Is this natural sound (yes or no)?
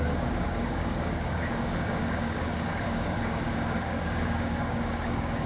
no